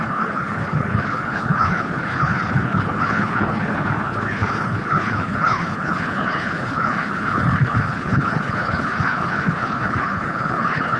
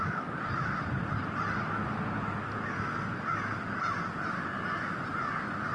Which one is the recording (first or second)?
second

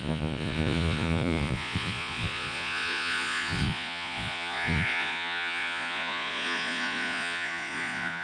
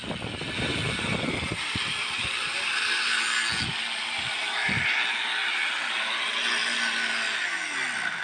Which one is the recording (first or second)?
second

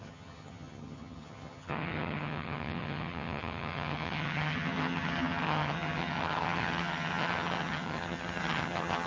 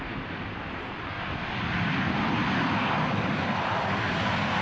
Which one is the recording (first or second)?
second